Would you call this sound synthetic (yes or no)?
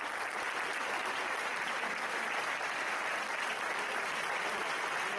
no